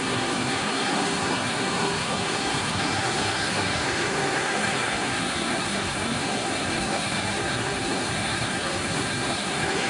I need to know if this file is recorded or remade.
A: remade